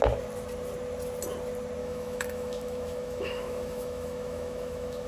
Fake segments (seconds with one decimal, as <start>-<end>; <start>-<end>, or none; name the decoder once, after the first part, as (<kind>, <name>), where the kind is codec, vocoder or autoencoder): 1.8-5.1 (autoencoder, DAC-VAE)